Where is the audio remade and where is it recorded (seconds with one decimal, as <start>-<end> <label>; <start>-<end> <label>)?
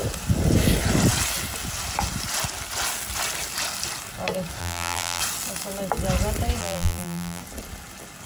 0.0-4.6 recorded; 4.6-5.2 remade; 5.2-6.6 recorded; 6.6-7.4 remade; 7.4-8.3 recorded